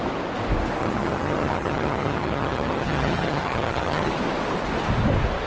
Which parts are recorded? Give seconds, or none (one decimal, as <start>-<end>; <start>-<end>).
0.0-0.8; 4.1-5.5